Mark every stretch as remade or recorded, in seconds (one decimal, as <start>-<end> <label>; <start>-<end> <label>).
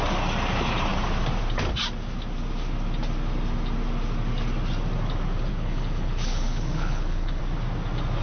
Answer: 0.0-5.5 recorded; 5.5-7.4 remade; 7.4-8.2 recorded